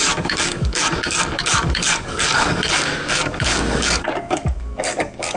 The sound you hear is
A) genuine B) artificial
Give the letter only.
B